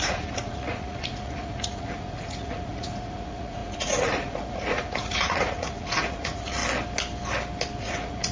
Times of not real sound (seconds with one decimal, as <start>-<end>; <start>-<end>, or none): 0.0-6.6; 7.8-8.3